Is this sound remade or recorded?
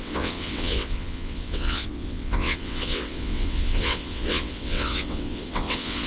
remade